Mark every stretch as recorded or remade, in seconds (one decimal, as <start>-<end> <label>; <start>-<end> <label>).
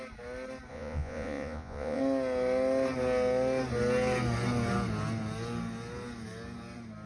0.0-0.7 recorded; 0.7-2.0 remade; 2.0-7.1 recorded